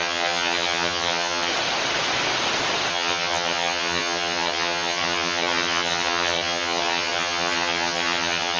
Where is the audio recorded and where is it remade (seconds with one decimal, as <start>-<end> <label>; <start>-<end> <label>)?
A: 0.0-1.5 remade; 1.5-2.9 recorded; 2.9-8.6 remade